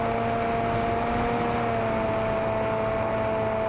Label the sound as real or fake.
real